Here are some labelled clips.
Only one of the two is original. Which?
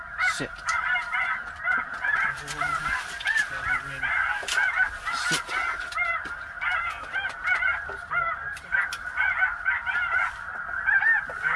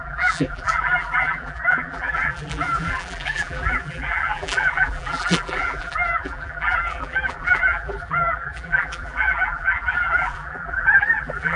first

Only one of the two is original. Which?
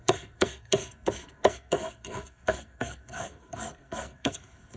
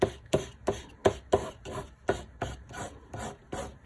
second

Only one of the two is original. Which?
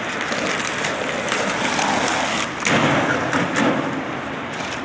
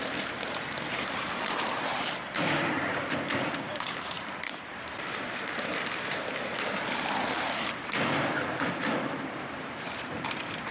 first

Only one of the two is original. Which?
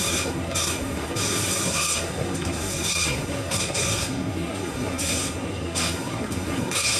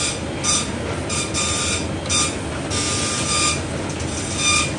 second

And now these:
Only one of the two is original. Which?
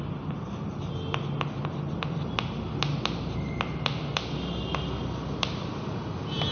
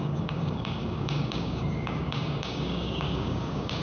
first